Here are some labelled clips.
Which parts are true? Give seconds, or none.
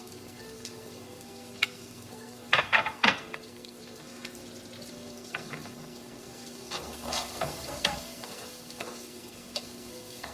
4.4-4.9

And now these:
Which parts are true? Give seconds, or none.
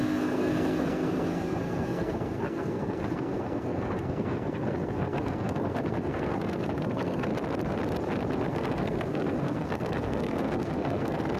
7.3-8.4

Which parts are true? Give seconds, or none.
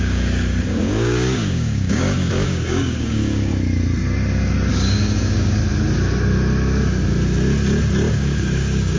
3.5-4.7; 5.6-8.1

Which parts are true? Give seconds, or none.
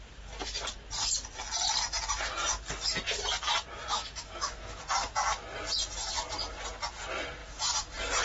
0.0-3.9; 4.8-8.2